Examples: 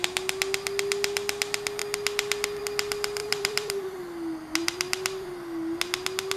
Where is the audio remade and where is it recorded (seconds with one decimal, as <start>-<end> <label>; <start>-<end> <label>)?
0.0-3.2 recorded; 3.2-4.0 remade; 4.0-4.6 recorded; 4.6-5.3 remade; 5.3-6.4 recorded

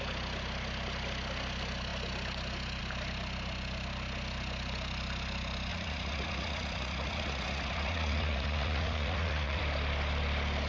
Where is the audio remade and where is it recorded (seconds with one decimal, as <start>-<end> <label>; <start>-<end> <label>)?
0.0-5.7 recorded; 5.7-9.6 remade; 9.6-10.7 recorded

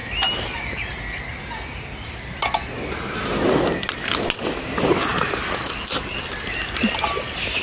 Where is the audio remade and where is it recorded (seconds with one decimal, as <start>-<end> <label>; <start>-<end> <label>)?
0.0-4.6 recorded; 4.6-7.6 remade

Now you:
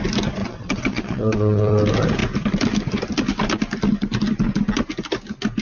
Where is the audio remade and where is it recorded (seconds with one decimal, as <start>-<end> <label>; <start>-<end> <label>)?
0.0-0.4 recorded; 0.4-1.8 remade; 1.8-5.6 recorded

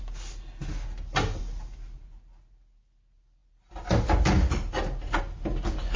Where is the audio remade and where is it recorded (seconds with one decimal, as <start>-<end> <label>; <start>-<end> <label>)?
0.0-6.0 recorded